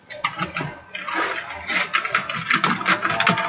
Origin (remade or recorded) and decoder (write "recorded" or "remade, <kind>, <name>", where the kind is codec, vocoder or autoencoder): recorded